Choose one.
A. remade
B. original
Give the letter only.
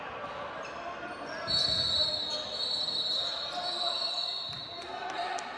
B